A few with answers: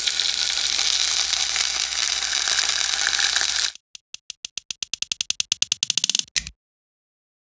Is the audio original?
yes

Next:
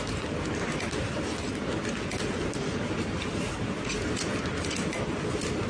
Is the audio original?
yes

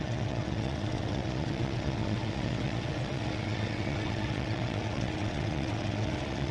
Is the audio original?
no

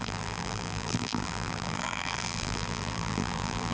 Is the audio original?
no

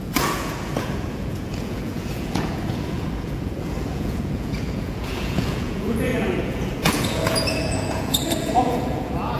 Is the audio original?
no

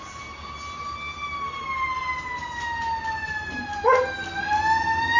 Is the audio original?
yes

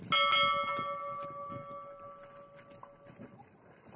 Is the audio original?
yes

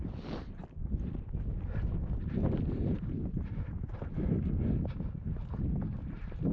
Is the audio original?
yes